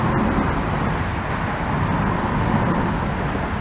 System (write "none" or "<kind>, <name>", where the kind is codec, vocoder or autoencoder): none